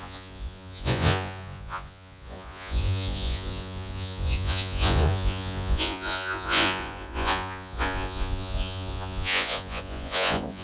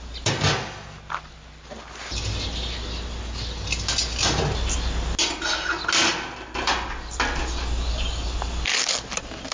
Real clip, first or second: second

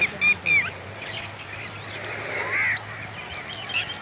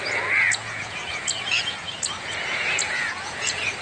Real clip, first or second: first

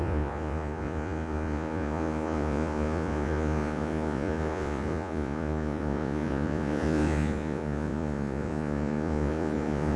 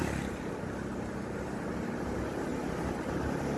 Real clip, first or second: second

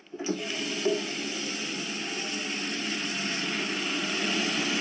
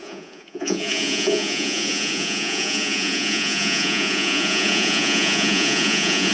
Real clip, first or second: first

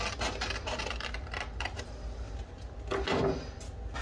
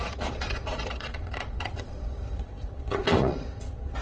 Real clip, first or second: first